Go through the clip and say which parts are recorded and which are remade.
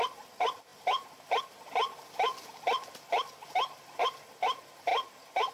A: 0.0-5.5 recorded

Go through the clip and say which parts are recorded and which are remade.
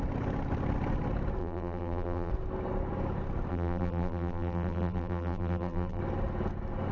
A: 0.0-1.4 recorded; 1.4-2.3 remade; 2.3-3.5 recorded; 3.5-6.0 remade; 6.0-6.9 recorded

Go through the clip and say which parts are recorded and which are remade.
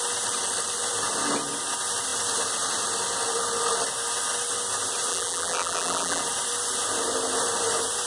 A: 0.0-5.1 recorded; 5.1-6.2 remade; 6.2-8.1 recorded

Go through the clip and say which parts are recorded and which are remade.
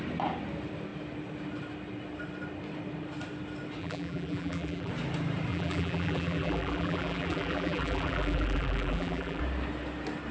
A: 0.0-3.8 recorded; 3.8-4.9 remade; 4.9-5.5 recorded; 5.5-9.4 remade; 9.4-10.3 recorded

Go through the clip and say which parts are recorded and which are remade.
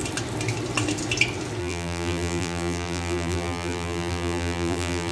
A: 0.0-1.6 recorded; 1.6-5.1 remade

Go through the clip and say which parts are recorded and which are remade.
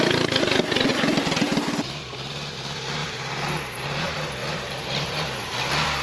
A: 0.0-0.9 recorded; 0.9-2.3 remade; 2.3-3.0 recorded; 3.0-4.0 remade; 4.0-4.4 recorded; 4.4-5.2 remade; 5.2-6.0 recorded